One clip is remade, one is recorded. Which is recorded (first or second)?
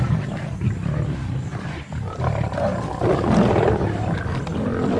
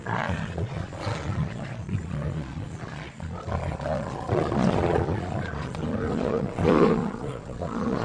first